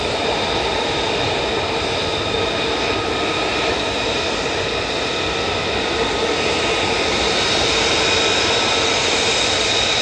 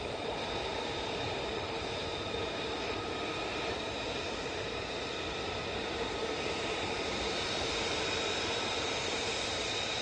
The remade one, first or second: second